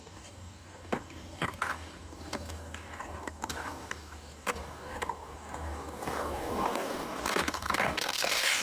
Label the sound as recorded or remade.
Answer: remade